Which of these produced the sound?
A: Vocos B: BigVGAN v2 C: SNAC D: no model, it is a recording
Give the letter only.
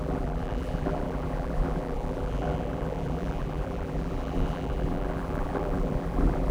B